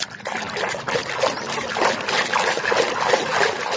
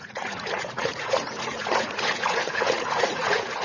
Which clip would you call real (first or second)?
first